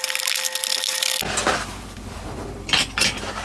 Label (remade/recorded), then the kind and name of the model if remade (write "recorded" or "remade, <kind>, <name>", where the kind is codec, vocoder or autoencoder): recorded